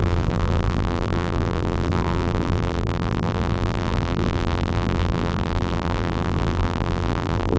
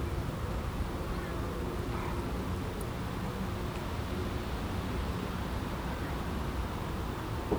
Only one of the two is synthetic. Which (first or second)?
first